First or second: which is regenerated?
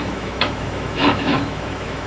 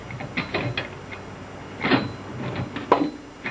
first